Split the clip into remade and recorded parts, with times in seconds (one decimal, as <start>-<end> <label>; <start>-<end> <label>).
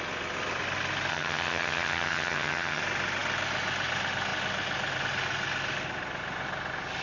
0.0-1.1 recorded; 1.1-2.8 remade; 2.8-7.0 recorded